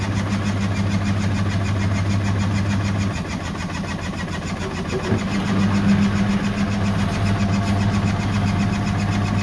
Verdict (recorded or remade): recorded